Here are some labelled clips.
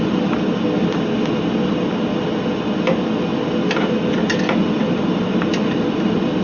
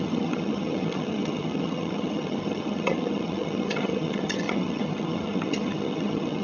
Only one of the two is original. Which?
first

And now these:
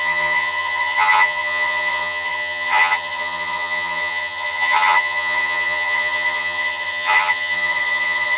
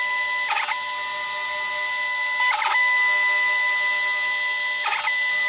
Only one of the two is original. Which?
second